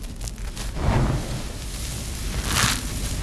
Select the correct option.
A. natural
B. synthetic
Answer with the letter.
A